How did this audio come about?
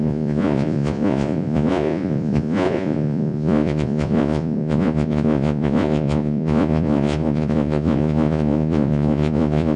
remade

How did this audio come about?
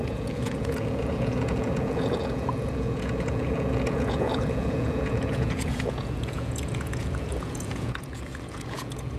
remade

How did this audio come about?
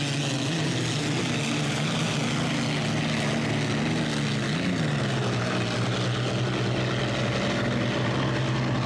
recorded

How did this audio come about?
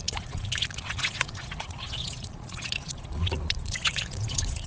remade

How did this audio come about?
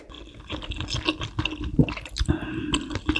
recorded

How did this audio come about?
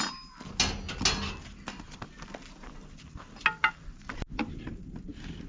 recorded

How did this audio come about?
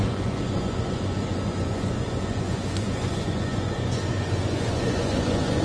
remade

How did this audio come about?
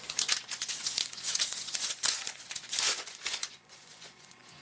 remade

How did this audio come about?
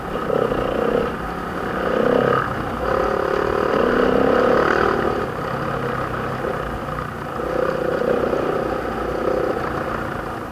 recorded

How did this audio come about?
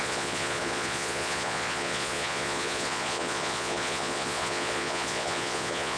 remade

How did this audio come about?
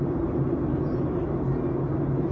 recorded